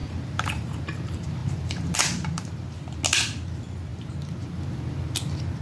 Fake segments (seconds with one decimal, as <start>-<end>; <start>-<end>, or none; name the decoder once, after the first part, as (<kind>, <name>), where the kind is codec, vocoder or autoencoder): 0.0-0.8 (vocoder, BigVGAN v2); 1.4-3.0

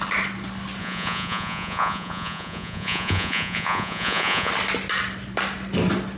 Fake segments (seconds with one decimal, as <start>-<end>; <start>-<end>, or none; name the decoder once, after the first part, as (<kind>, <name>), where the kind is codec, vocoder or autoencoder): 0.8-4.5 (vocoder, Vocos)